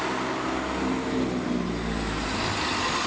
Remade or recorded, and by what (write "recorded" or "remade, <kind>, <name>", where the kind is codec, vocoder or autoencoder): recorded